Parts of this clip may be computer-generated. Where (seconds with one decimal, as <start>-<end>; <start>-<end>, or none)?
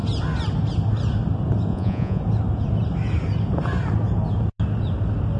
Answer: 1.7-2.2